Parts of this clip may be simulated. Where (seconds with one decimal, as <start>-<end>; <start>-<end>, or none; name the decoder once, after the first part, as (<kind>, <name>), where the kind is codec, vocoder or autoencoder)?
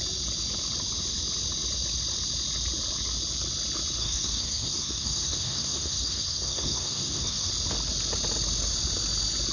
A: 4.0-7.5 (codec, SNAC)